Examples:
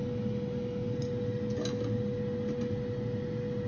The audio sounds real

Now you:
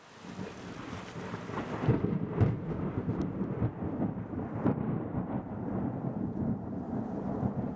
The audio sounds fake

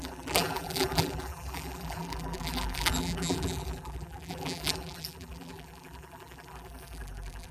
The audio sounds fake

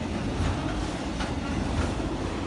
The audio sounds real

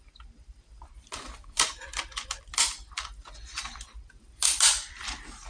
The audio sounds fake